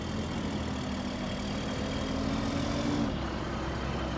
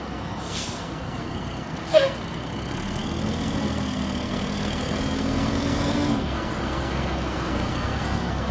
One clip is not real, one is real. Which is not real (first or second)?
second